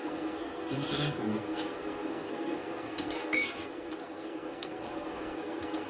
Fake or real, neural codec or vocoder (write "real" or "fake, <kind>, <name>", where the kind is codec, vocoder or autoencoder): fake, codec, SNAC